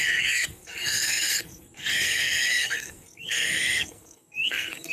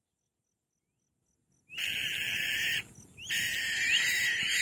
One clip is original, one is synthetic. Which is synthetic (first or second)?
first